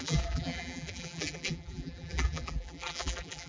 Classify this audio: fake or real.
fake